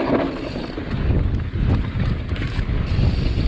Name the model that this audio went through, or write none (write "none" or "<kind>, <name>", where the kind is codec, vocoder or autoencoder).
none